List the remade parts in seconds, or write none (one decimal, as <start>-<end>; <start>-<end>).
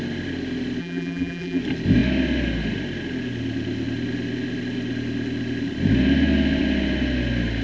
0.8-1.6